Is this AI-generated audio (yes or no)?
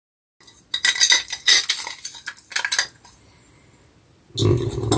no